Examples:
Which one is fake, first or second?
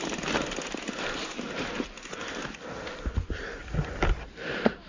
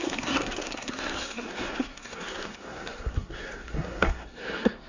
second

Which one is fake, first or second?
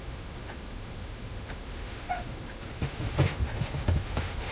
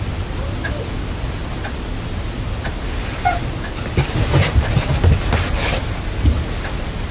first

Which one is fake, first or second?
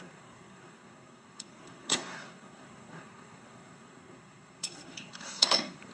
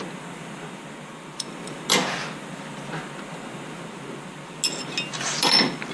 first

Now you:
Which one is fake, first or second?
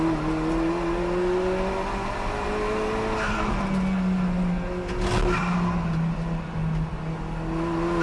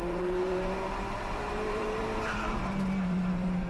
second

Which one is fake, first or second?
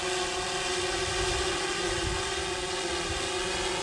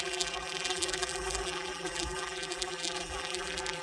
second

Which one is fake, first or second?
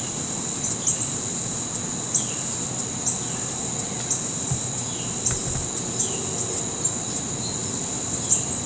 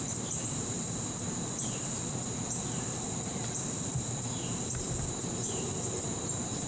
second